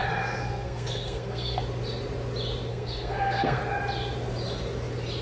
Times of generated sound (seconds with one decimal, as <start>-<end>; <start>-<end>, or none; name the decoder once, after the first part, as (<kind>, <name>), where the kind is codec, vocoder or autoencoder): 0.0-1.6 (codec, SNAC); 2.7-3.6